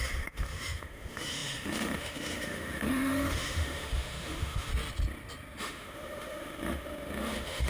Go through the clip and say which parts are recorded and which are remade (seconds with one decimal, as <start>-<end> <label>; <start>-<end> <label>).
0.0-4.7 remade; 4.7-5.6 recorded; 5.6-7.7 remade